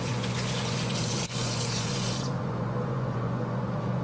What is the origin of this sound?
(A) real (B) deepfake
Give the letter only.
B